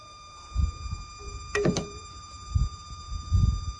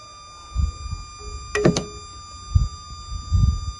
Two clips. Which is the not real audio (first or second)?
first